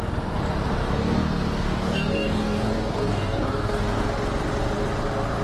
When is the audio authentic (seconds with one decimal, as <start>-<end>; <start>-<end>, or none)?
0.0-0.8; 4.0-5.4